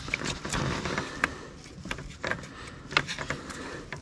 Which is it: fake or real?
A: real